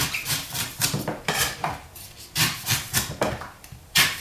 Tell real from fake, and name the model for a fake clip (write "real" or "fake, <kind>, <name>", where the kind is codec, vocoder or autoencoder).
fake, vocoder, BigVGAN v2